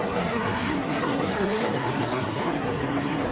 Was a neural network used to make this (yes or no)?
yes